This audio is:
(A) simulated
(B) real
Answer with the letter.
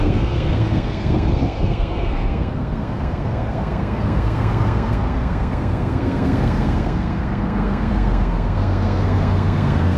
A